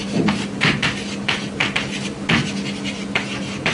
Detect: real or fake real